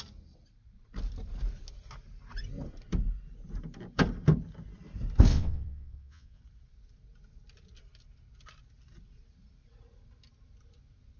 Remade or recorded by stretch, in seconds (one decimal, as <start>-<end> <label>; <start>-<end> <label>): 0.0-5.3 recorded; 5.3-6.4 remade; 6.4-11.2 recorded